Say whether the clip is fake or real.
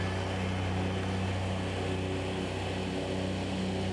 real